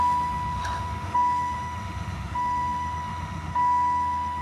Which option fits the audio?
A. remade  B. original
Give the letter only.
A